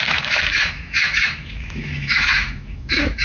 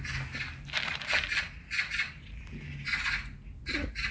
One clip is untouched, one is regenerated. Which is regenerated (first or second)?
first